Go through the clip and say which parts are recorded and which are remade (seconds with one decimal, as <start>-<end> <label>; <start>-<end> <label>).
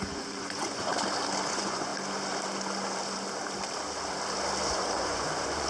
0.0-0.9 remade; 0.9-1.5 recorded; 1.5-1.9 remade; 1.9-4.7 recorded; 4.7-5.7 remade